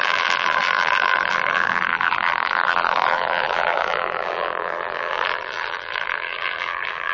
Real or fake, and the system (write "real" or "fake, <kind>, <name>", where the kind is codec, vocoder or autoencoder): fake, vocoder, BigVGAN v2